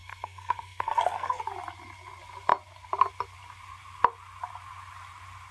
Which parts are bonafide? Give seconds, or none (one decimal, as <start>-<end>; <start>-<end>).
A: 1.4-5.5